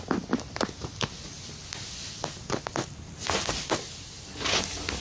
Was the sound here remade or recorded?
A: recorded